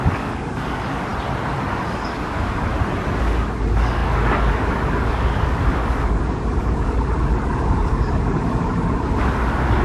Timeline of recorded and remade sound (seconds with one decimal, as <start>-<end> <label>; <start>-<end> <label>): 0.0-1.1 remade; 1.1-1.7 recorded; 1.7-2.7 remade; 2.7-3.2 recorded; 3.2-9.8 remade

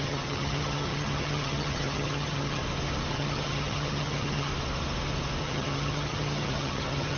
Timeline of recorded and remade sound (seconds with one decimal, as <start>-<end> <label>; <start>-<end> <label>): 0.0-2.6 remade; 2.6-3.1 recorded; 3.1-4.5 remade; 4.5-5.4 recorded; 5.4-7.2 remade